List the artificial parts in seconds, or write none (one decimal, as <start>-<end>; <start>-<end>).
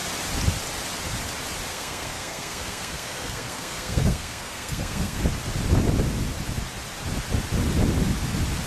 1.7-5.2